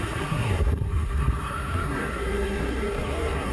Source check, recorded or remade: remade